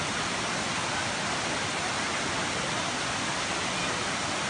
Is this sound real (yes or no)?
yes